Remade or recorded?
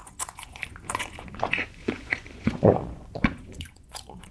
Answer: remade